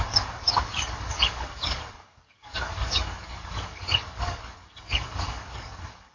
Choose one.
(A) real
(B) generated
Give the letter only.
B